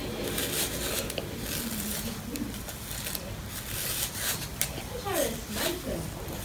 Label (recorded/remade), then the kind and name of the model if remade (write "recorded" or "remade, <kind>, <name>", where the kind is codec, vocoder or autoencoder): recorded